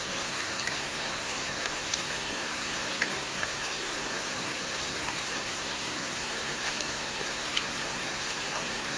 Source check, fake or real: fake